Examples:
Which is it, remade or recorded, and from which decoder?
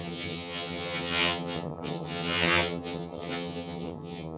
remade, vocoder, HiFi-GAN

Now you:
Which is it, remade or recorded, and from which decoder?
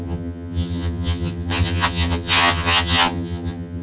remade, vocoder, HiFi-GAN